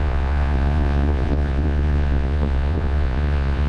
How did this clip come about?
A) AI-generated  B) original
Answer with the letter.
A